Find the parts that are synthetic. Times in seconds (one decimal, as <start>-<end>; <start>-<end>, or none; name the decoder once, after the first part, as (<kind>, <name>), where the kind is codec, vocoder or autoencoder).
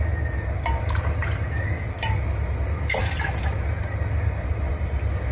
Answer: none